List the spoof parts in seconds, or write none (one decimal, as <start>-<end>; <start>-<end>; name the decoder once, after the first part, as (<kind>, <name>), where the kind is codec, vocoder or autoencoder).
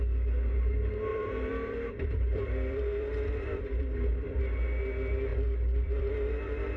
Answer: 1.1-4.4 (vocoder, BigVGAN v2); 5.3-6.1